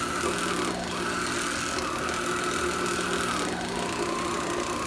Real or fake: real